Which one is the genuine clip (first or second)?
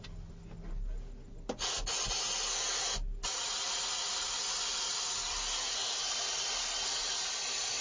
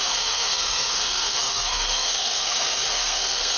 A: first